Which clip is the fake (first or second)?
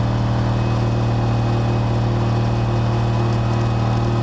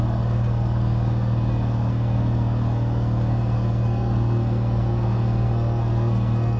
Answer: second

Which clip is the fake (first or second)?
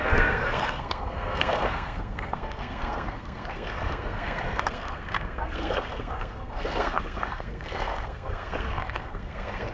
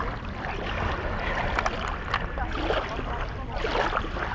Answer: first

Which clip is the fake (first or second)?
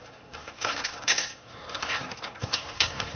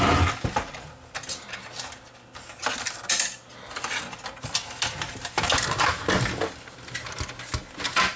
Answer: first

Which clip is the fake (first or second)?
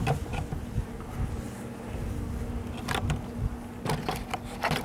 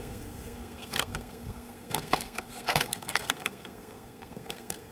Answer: second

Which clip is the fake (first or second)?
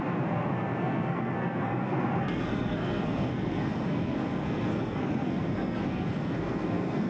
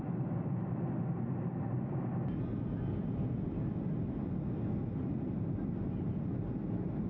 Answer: first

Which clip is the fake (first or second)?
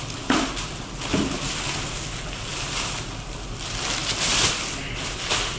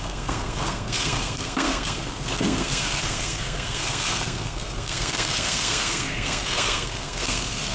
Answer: second